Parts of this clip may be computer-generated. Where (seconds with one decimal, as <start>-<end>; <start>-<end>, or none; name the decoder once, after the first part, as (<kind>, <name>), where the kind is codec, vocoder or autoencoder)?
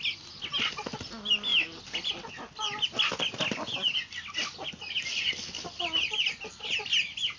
none